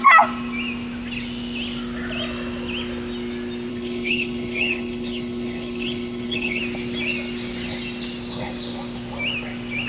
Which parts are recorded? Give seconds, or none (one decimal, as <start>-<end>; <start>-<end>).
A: 0.0-3.7; 6.6-9.9